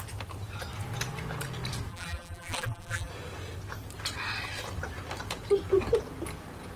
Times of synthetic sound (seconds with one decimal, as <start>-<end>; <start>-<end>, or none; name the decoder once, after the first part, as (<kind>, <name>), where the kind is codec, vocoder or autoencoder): 1.9-3.1 (vocoder, BigVGAN v2)